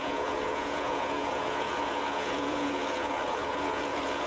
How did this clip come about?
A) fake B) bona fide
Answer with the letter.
A